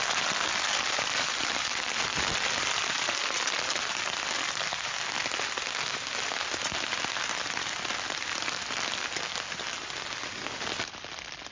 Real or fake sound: real